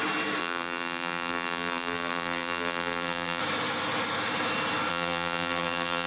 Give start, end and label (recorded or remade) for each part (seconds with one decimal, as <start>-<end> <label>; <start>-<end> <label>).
0.0-0.4 recorded; 0.4-3.4 remade; 3.4-4.9 recorded; 4.9-6.1 remade